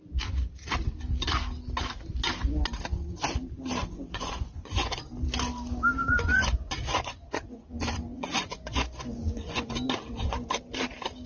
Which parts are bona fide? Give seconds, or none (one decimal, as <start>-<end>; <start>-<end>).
0.0-3.8; 5.1-6.0; 9.7-11.3